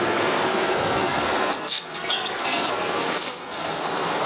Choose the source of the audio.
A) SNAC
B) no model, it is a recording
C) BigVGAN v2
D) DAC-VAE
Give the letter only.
A